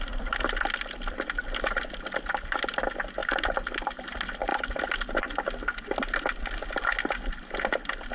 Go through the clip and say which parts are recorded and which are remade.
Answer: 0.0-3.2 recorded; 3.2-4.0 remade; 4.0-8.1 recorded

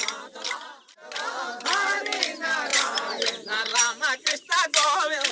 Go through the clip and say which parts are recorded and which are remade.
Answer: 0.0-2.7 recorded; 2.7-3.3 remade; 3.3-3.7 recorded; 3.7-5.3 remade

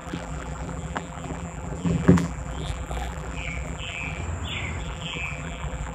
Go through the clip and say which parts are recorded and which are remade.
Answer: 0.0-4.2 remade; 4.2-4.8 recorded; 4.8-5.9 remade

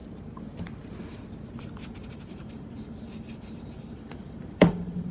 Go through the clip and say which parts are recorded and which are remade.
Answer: 0.0-2.1 recorded; 2.1-5.1 remade